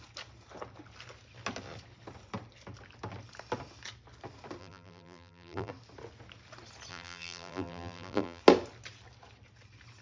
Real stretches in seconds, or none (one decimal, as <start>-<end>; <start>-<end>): 0.0-4.6; 5.7-6.9; 8.4-10.0